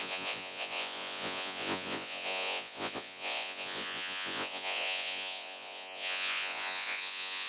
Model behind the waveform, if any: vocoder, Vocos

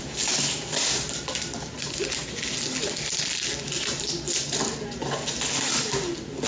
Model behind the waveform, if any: none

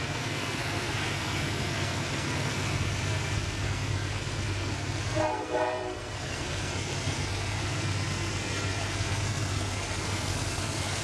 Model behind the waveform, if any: codec, SNAC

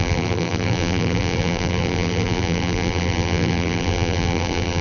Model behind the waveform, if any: vocoder, BigVGAN v2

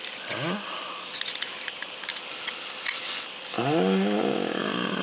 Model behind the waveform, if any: none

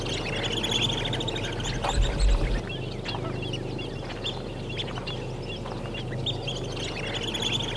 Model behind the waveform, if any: none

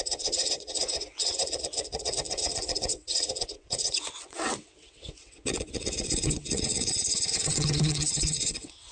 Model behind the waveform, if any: vocoder, WaveNeXt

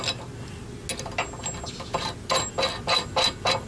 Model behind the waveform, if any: none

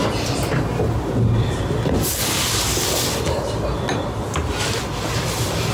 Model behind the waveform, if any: none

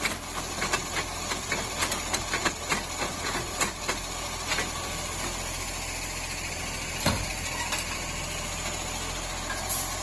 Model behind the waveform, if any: none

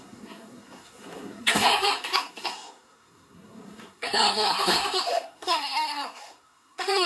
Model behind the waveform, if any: codec, SNAC